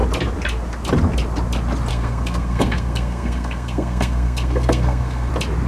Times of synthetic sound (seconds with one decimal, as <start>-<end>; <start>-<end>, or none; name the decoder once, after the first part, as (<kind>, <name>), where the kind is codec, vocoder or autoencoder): 1.9-5.3 (codec, SNAC)